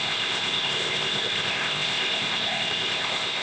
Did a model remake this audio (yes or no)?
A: yes